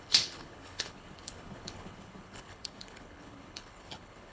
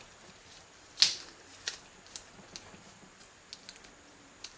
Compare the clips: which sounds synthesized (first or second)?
first